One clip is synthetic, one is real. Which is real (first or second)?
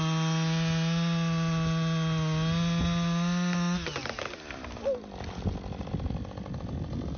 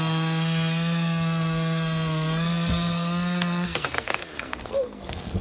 first